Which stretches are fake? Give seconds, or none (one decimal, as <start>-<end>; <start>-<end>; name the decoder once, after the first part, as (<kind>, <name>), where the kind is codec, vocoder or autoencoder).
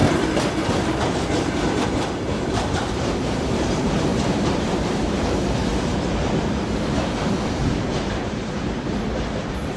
1.0-9.8 (vocoder, BigVGAN v2)